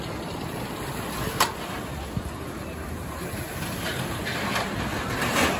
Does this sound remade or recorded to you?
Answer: recorded